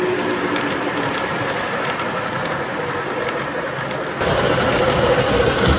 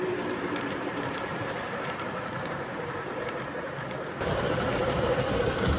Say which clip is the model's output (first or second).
second